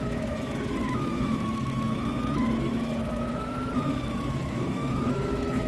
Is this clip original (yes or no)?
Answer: no